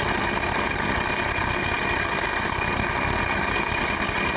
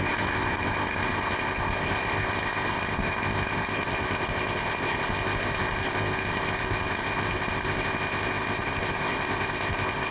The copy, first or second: second